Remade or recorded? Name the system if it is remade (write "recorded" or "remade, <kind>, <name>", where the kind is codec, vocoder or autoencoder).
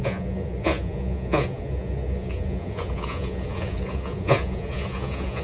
remade, vocoder, Vocos